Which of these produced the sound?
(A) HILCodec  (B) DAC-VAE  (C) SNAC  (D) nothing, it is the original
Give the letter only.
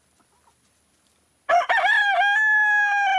D